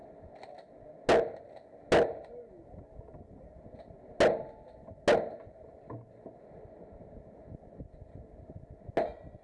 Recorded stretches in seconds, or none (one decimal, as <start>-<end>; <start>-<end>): 0.0-9.4